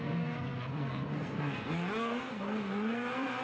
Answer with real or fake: fake